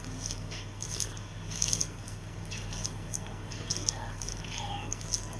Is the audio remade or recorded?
remade